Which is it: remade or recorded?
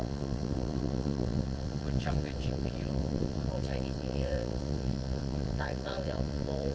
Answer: remade